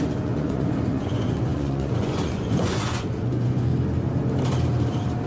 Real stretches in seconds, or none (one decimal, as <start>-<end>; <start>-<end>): 3.7-5.3